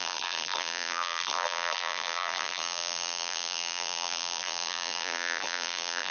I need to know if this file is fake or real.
fake